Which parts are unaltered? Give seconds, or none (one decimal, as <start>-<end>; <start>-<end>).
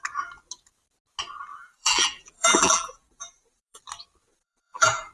0.0-1.5; 3.8-4.3